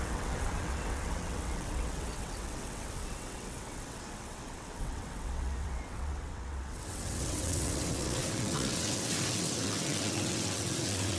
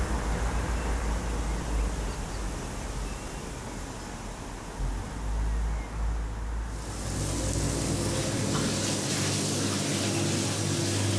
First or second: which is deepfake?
first